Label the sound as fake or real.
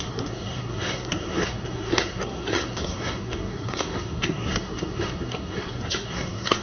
fake